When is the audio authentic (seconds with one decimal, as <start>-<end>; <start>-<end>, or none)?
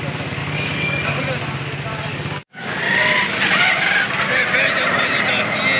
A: 0.0-0.4; 1.2-2.1; 2.8-5.8